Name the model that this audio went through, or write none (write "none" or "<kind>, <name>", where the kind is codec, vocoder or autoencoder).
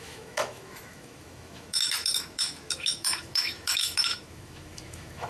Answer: autoencoder, DAC-VAE